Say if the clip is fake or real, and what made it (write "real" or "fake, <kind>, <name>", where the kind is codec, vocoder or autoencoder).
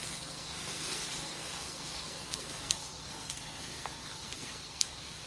fake, codec, SNAC